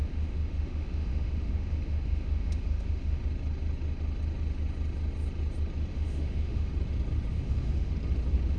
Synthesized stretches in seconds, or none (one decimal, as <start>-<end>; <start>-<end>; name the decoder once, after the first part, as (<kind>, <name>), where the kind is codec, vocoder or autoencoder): 0.0-3.2 (autoencoder, DAC-VAE); 5.9-6.7; 7.3-7.9